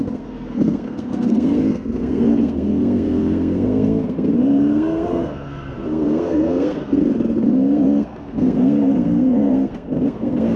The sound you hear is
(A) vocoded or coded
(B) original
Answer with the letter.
A